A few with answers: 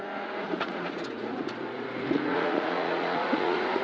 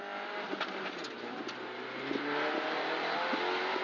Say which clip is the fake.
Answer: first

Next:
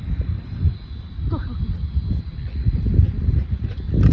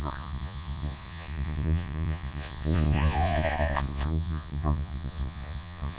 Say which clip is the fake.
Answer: second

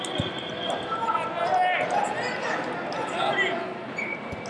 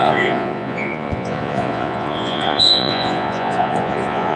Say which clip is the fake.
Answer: second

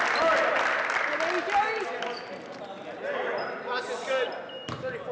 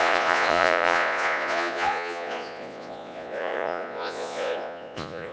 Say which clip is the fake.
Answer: second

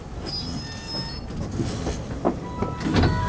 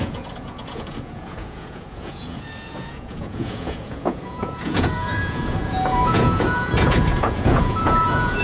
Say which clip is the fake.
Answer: second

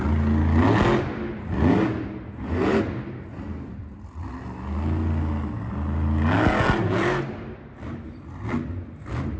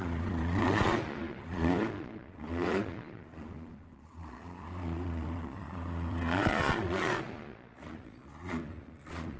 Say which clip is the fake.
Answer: second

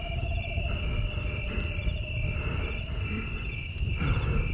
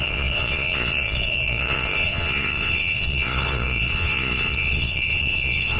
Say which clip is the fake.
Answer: second